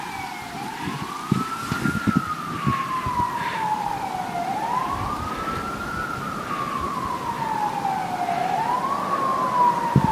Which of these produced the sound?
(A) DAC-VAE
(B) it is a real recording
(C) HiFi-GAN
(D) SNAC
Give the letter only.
B